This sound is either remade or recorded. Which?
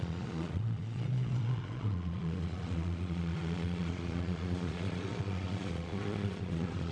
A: remade